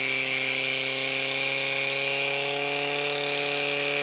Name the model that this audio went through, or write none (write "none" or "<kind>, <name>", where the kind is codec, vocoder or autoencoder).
autoencoder, DAC-VAE